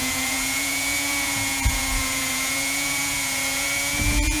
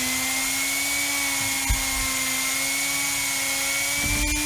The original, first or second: second